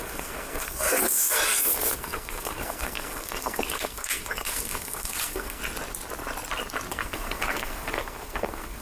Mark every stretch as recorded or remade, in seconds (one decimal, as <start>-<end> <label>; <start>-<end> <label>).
0.0-5.6 remade; 5.6-6.9 recorded; 6.9-8.8 remade